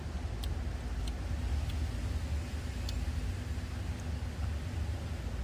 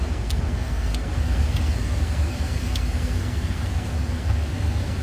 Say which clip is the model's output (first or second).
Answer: second